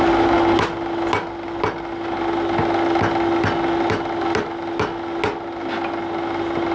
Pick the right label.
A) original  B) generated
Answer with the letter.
A